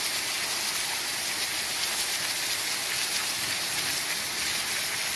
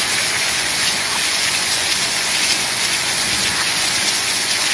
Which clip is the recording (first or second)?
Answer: first